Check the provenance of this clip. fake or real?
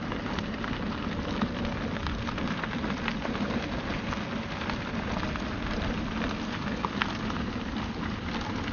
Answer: real